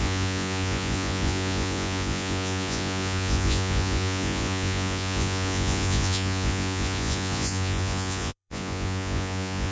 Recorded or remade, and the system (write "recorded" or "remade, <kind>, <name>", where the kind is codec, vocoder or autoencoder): remade, vocoder, Vocos